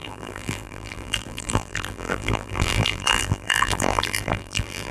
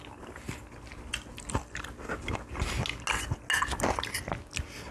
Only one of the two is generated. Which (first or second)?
first